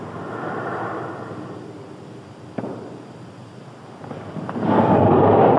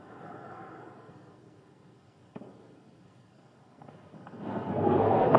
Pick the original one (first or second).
first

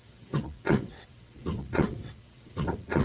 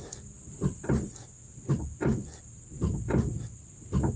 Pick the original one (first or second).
second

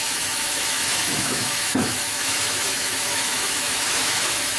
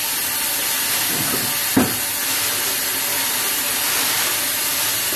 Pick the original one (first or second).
second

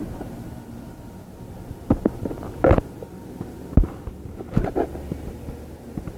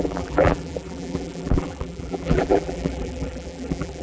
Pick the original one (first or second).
first